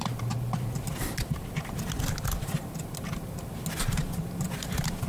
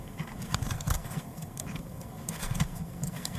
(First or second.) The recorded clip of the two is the first